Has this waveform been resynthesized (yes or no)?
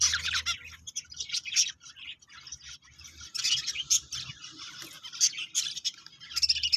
no